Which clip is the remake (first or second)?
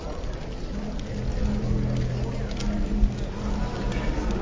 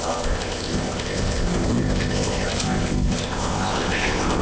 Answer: second